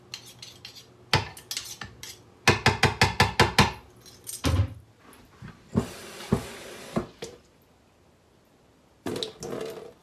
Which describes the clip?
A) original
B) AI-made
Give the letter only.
A